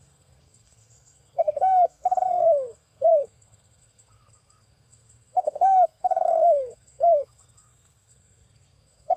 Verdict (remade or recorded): remade